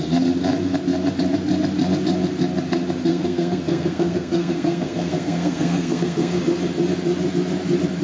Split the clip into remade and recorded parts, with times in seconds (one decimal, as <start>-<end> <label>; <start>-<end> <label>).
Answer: 0.0-3.1 recorded; 3.1-6.4 remade; 6.4-8.0 recorded